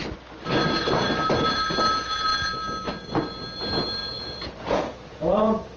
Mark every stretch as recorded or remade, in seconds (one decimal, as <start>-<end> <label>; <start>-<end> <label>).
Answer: 0.0-4.0 recorded; 4.0-5.8 remade